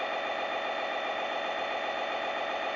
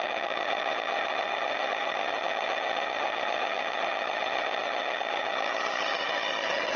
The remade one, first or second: second